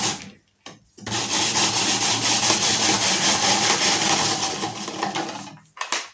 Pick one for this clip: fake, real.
real